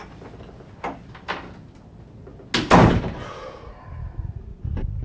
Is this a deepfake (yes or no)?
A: no